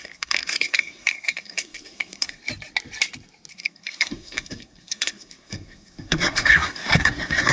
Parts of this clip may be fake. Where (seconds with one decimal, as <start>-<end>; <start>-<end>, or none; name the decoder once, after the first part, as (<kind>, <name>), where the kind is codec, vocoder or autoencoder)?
0.0-2.4 (codec, SNAC); 3.5-7.5